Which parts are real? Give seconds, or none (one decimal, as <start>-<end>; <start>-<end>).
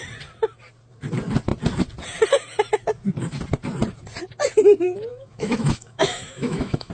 0.0-5.1